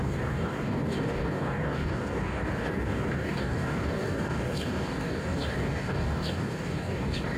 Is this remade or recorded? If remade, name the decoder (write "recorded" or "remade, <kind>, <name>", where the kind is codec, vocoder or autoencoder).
remade, codec, DAC